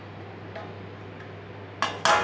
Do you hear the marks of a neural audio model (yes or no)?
no